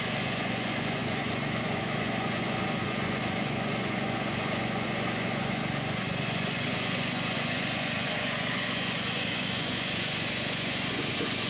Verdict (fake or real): fake